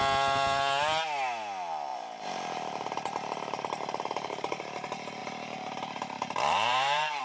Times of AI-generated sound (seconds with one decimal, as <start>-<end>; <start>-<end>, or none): 1.9-4.5; 5.2-7.2